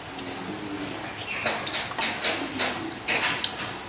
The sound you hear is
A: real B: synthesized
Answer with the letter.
A